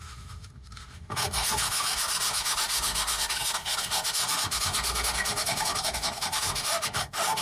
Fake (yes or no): yes